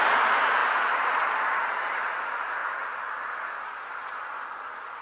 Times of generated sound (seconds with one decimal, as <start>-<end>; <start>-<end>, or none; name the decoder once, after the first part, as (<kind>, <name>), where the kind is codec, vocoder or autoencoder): 0.6-2.1 (vocoder, BigVGAN v2); 2.6-3.3